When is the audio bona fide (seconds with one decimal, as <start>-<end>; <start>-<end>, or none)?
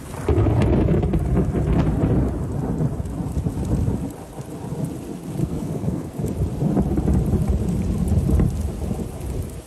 0.0-5.4; 6.3-9.7